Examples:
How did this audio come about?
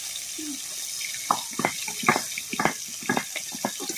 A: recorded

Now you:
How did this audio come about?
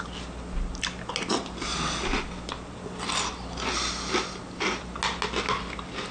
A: recorded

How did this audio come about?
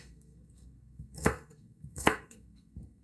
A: remade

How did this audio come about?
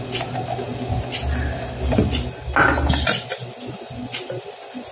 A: recorded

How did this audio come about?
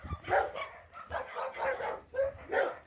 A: recorded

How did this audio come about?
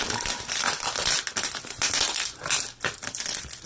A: recorded